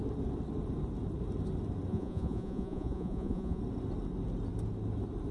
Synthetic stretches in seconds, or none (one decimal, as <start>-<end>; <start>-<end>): 1.9-3.6

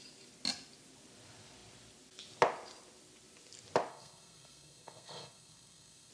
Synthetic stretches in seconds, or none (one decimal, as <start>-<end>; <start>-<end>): 3.9-6.1

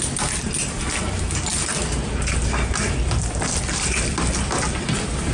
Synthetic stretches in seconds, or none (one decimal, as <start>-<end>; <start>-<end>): none

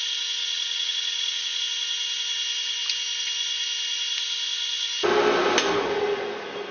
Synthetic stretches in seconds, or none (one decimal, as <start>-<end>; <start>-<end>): 0.4-1.6

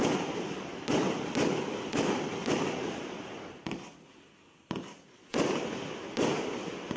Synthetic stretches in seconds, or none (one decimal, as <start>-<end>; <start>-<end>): 0.0-5.3; 6.3-7.0

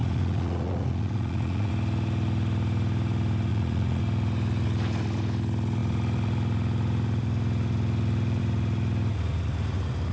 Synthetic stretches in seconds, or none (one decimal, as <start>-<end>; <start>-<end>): 0.0-1.7; 3.5-4.0

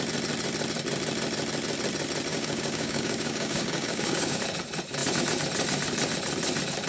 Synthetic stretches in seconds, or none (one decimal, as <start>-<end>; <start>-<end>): 2.3-4.4